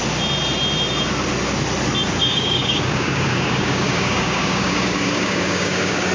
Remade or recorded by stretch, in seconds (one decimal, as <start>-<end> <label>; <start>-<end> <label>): 0.0-2.2 recorded; 2.2-6.1 remade

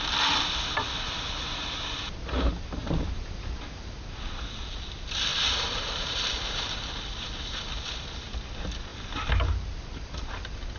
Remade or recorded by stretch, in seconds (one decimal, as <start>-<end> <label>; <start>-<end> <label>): 0.0-2.8 recorded; 2.8-3.9 remade; 3.9-5.3 recorded; 5.3-7.6 remade; 7.6-10.8 recorded

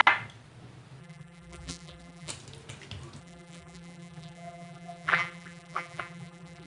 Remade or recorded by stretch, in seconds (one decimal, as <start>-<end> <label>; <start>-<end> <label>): 0.0-1.0 recorded; 1.0-2.3 remade; 2.3-3.2 recorded; 3.2-6.7 remade

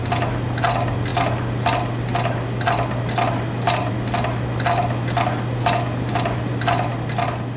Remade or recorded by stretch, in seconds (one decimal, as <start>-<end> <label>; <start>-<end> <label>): 0.0-7.6 recorded

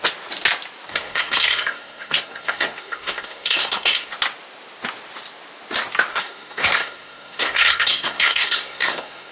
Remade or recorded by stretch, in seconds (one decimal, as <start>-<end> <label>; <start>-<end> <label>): 0.0-0.9 recorded; 0.9-4.1 remade; 4.1-6.1 recorded; 6.1-9.3 remade